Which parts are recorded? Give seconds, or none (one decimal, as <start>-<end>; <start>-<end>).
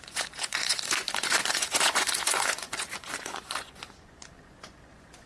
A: none